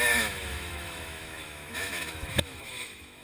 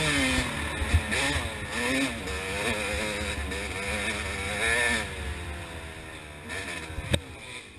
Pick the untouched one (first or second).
second